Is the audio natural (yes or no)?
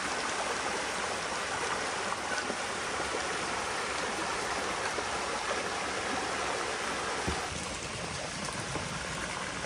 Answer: yes